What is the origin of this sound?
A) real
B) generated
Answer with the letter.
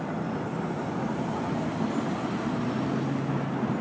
A